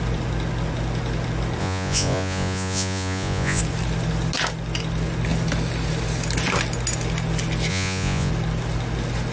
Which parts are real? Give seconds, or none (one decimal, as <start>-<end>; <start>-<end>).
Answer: 0.0-1.6; 3.6-7.7; 8.3-9.3